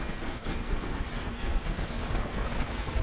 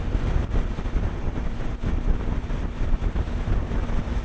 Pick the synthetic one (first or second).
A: first